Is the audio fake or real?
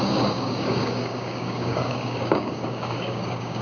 fake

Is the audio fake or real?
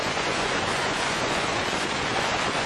fake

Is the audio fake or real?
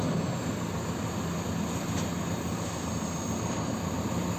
real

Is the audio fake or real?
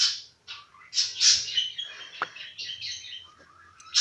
real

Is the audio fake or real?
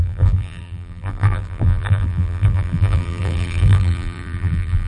fake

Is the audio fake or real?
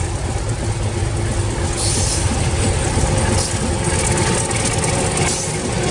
real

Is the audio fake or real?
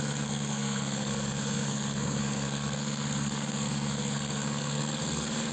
fake